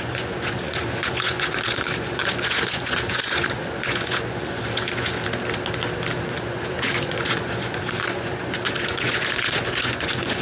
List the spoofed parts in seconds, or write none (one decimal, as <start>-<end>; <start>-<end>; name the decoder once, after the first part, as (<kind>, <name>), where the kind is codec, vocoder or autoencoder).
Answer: 0.0-5.2 (vocoder, Vocos); 6.2-10.4